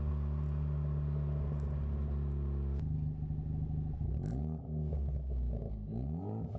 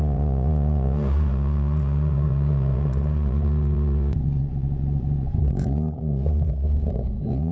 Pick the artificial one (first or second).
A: second